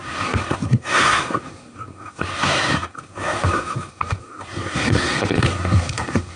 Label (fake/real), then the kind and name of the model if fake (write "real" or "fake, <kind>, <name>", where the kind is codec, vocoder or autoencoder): fake, codec, SNAC